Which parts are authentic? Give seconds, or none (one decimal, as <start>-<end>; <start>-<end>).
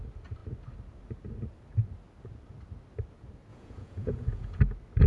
0.0-3.5; 4.6-5.1